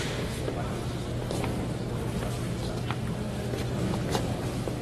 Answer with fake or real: real